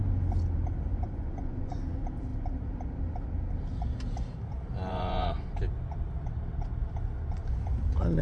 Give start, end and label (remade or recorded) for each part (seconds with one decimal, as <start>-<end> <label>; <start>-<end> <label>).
0.0-0.9 recorded; 0.9-1.7 remade; 1.7-4.9 recorded; 4.9-5.5 remade; 5.5-8.2 recorded